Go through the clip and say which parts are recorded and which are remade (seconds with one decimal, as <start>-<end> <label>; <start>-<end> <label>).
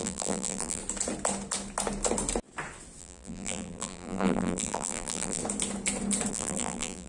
0.0-0.8 remade; 0.8-3.0 recorded; 3.0-5.4 remade; 5.4-6.3 recorded; 6.3-7.1 remade